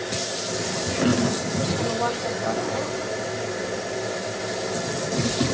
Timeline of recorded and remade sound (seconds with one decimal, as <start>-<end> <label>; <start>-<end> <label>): 0.0-5.5 recorded